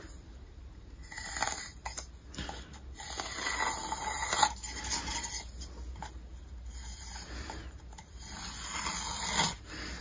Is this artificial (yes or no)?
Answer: no